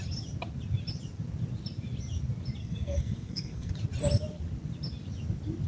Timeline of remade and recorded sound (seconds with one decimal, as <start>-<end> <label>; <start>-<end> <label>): 0.0-2.6 recorded; 2.6-3.7 remade; 3.7-5.7 recorded